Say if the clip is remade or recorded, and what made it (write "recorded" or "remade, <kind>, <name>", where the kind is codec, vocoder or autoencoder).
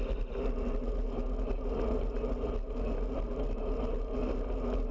recorded